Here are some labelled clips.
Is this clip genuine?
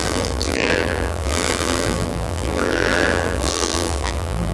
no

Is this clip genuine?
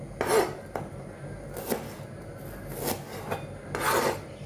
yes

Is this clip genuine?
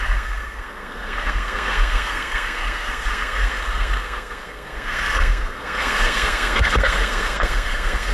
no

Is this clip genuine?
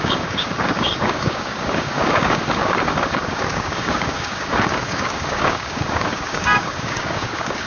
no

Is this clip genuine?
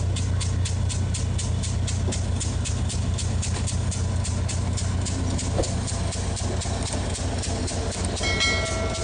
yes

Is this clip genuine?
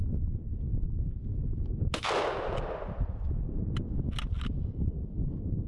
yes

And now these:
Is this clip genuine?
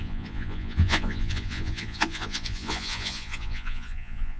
no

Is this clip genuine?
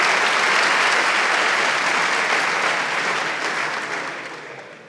yes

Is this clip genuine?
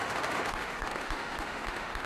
no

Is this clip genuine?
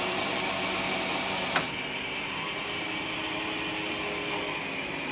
yes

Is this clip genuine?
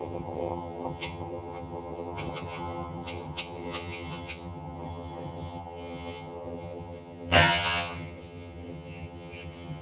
no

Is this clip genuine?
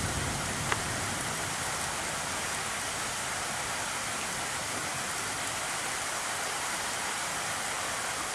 yes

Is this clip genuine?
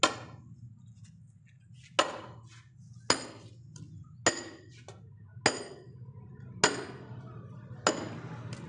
yes